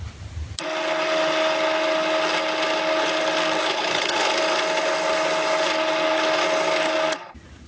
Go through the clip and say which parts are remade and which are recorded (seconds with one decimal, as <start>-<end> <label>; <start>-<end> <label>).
0.0-3.6 recorded; 3.6-4.3 remade; 4.3-7.7 recorded